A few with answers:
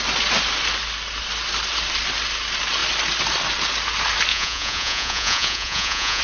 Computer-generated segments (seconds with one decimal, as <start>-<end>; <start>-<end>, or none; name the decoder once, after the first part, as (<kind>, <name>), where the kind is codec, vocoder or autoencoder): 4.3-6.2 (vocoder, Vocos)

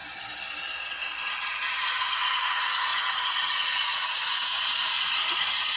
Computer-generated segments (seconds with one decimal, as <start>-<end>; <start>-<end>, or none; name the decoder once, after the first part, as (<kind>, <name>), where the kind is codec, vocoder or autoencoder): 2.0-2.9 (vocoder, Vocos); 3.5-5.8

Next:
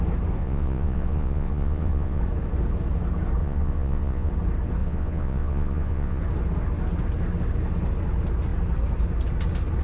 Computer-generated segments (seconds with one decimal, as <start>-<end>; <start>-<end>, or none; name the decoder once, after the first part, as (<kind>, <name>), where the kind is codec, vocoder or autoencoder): 0.4-2.2 (vocoder, Vocos); 3.4-4.3; 4.8-6.2

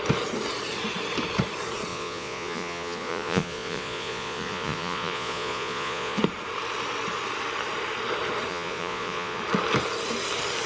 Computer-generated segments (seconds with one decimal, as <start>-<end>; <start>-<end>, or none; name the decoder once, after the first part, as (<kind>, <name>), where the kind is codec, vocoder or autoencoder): 1.9-6.2 (vocoder, Vocos); 8.5-9.4

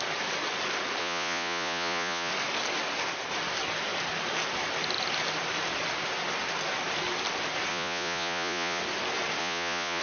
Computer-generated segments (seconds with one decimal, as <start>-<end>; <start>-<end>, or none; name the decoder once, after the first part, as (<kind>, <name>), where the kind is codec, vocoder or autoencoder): 1.0-2.3 (vocoder, Vocos); 7.7-8.8; 9.4-10.0

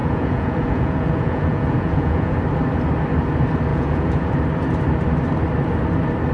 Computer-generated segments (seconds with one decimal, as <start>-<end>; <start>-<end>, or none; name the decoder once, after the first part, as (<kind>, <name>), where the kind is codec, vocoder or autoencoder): 0.0-2.4 (vocoder, Vocos); 3.7-4.3